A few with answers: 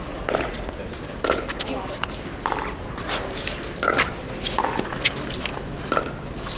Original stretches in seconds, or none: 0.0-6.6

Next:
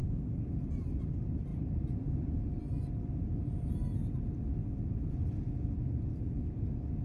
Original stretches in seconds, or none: 0.9-7.0

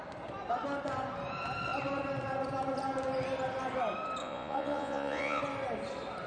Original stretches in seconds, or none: 0.0-4.2; 5.4-6.3

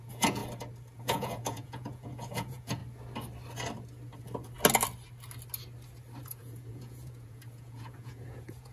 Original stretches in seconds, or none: 0.4-1.0; 2.8-6.2

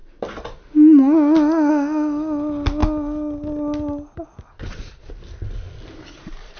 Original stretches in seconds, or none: 0.0-6.6

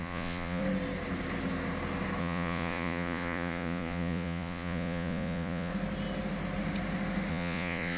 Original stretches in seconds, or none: 0.6-2.2; 5.7-7.3

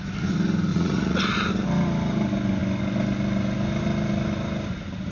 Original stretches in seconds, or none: 0.0-0.7; 1.2-5.1